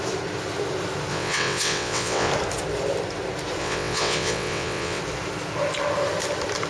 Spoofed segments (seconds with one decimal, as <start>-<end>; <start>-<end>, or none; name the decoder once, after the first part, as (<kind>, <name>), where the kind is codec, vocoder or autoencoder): 1.1-2.3 (vocoder, WaveNeXt); 3.6-5.0